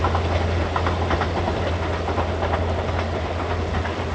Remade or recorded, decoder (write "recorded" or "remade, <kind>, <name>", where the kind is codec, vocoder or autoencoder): recorded